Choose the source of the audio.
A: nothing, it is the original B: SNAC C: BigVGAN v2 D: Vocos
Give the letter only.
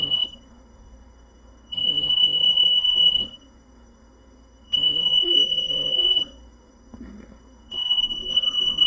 B